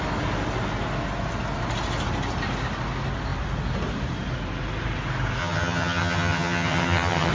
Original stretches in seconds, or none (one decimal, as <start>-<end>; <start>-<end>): 0.0-5.4